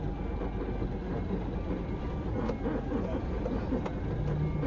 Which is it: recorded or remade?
recorded